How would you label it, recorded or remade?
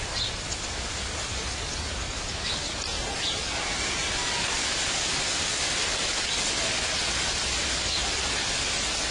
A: recorded